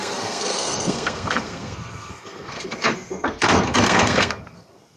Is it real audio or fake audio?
fake